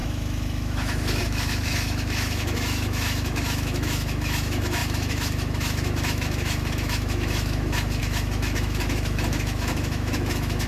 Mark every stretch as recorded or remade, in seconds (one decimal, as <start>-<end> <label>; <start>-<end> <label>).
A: 0.0-10.7 remade

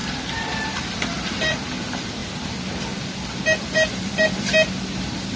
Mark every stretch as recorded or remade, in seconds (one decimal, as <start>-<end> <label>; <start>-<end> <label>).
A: 0.0-5.4 recorded

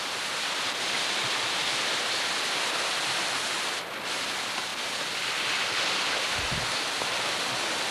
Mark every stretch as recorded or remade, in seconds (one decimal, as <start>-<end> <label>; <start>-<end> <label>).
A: 0.0-7.9 recorded

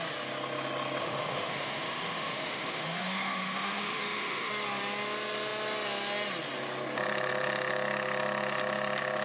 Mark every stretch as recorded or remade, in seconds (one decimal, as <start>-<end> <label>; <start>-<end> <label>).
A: 0.0-1.0 recorded; 1.0-4.5 remade; 4.5-9.2 recorded

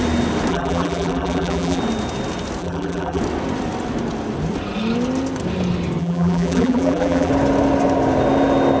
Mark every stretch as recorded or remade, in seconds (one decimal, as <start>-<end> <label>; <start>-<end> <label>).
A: 0.0-0.5 recorded; 0.5-1.8 remade; 1.8-2.6 recorded; 2.6-3.2 remade; 3.2-6.0 recorded; 6.0-7.3 remade; 7.3-8.8 recorded